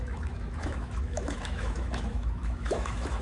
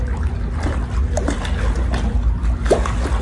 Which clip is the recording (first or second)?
second